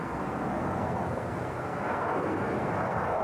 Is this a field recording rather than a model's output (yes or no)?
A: no